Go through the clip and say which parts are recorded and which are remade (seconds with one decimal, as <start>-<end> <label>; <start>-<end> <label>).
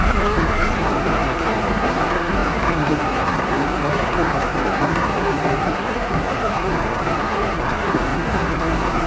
0.0-9.1 remade